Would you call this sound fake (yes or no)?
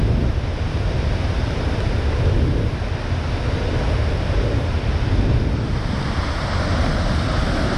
no